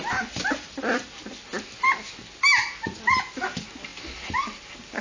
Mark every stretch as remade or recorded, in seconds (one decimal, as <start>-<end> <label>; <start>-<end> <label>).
0.0-5.0 recorded